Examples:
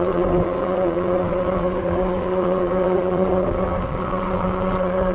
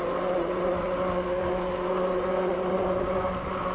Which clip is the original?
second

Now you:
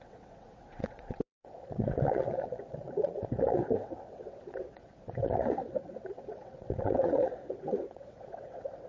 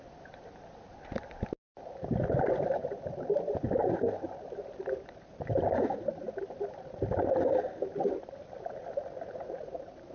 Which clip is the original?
second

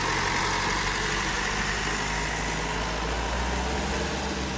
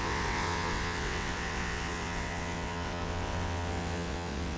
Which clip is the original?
first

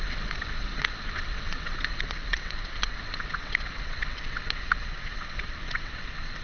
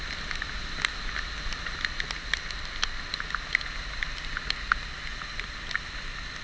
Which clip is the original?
second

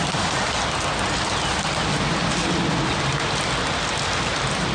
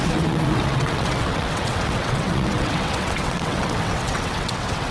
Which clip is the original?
first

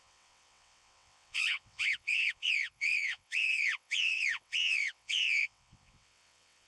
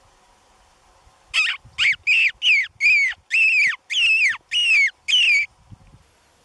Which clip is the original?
second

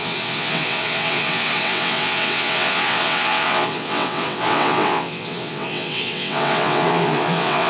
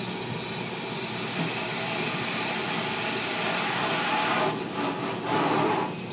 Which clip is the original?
second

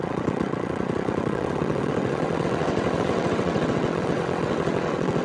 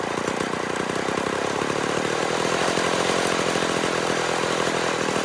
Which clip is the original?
second